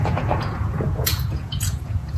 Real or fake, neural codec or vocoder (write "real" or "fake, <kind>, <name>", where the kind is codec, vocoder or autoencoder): fake, vocoder, Vocos